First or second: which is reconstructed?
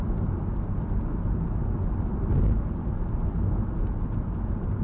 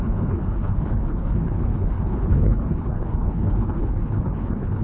second